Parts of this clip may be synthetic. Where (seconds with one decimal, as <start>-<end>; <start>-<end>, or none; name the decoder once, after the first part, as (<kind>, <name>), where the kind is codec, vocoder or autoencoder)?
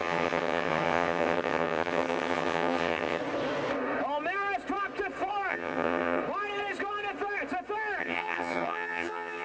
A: 0.0-3.2 (vocoder, HiFi-GAN); 5.5-6.2; 8.0-9.4